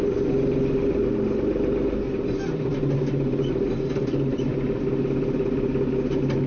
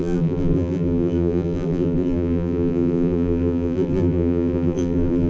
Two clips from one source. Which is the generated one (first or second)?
second